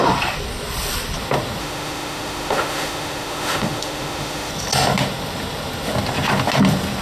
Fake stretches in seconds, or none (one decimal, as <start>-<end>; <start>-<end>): 1.6-4.5